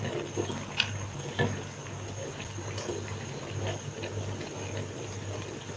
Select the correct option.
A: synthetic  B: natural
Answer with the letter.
B